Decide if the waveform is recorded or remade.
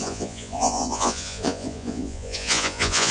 remade